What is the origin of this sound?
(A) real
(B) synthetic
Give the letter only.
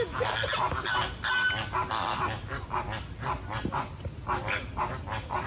A